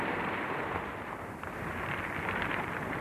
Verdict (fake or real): real